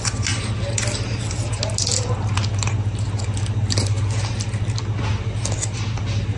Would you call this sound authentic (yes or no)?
yes